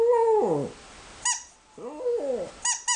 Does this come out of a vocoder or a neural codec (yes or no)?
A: no